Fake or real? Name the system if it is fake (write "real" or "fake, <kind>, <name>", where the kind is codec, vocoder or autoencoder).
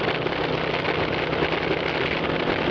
real